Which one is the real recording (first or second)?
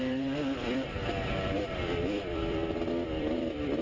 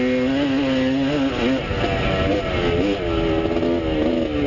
second